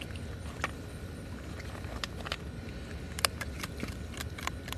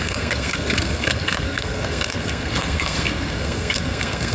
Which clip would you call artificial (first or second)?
second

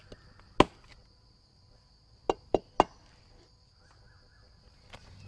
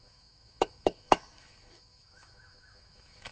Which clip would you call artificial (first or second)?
second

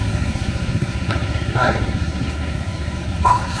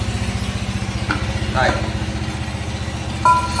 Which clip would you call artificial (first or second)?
first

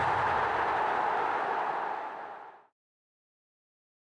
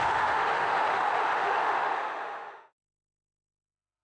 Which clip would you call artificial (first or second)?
second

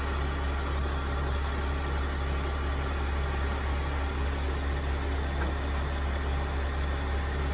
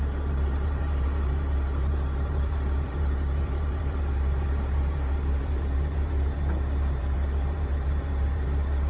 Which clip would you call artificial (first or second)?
second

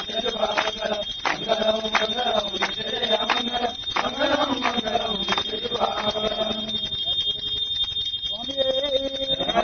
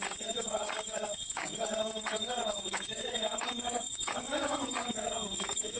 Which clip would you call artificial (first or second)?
second